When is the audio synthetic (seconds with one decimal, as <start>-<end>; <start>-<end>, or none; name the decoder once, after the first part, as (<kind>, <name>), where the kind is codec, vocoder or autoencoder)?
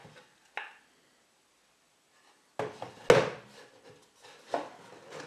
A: none